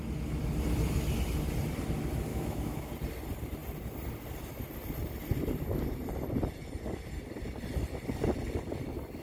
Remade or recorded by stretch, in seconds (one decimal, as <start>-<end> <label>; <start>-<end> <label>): 0.0-2.3 recorded; 2.3-2.9 remade; 2.9-9.2 recorded